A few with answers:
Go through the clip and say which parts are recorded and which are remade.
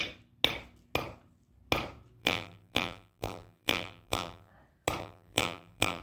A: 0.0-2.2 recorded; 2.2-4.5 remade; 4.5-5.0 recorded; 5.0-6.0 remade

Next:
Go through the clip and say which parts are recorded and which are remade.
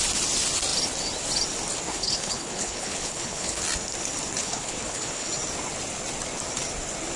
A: 0.0-1.9 recorded; 1.9-3.6 remade; 3.6-4.4 recorded; 4.4-5.3 remade; 5.3-7.2 recorded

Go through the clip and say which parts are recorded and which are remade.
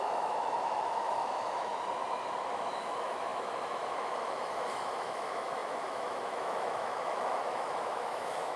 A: 0.0-1.7 remade; 1.7-2.4 recorded; 2.4-8.6 remade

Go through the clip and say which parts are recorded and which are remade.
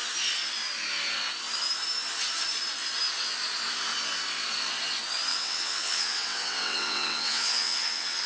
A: 0.0-5.3 recorded; 5.3-8.3 remade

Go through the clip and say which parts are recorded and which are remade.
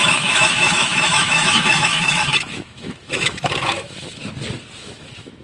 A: 0.0-4.2 remade; 4.2-4.8 recorded; 4.8-5.4 remade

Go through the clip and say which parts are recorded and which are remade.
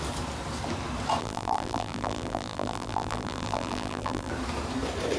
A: 0.0-1.2 recorded; 1.2-4.3 remade; 4.3-5.2 recorded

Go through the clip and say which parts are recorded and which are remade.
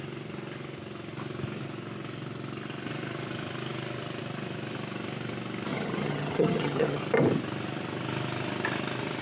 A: 0.0-5.7 recorded; 5.7-7.0 remade; 7.0-9.2 recorded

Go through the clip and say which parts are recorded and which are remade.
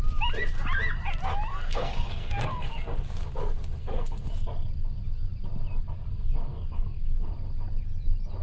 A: 0.0-1.5 recorded; 1.5-3.0 remade; 3.0-3.8 recorded; 3.8-4.3 remade; 4.3-6.1 recorded; 6.1-7.3 remade; 7.3-8.4 recorded